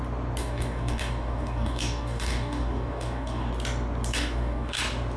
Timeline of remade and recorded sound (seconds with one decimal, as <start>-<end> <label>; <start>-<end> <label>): 0.0-0.4 recorded; 0.4-3.5 remade; 3.5-4.1 recorded; 4.1-4.8 remade; 4.8-5.2 recorded